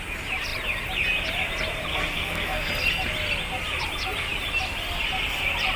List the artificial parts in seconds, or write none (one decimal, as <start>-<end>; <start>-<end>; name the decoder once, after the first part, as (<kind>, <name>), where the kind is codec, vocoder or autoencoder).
1.9-2.7 (codec, SNAC)